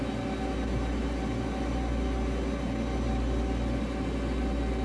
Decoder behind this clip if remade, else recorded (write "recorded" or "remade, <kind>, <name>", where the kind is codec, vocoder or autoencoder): recorded